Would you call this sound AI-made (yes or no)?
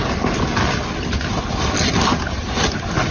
no